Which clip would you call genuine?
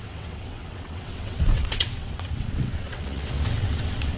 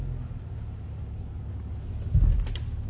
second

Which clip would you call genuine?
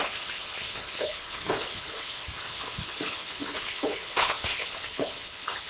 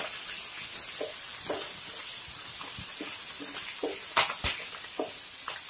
second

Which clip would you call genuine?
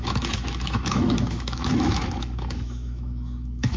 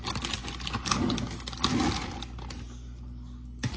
second